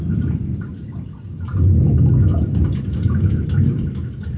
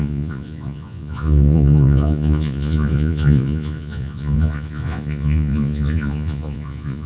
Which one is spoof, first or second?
second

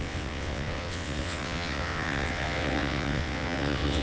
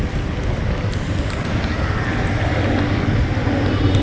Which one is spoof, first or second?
first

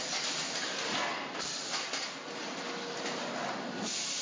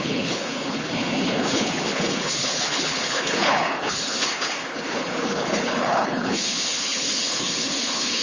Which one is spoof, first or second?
second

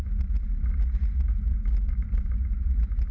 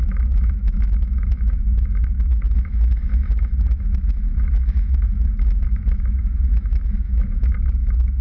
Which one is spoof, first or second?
second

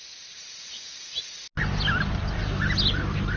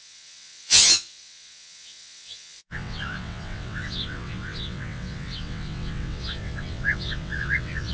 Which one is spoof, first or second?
second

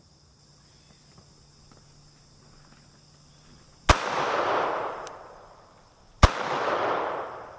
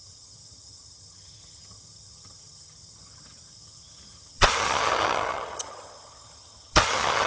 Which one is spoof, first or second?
second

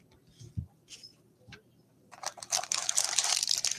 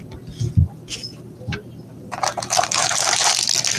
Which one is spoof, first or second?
first